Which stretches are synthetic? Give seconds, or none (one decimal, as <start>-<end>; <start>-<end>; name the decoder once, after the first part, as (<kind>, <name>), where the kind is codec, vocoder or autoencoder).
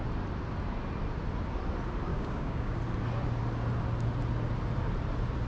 2.1-2.8 (codec, DAC)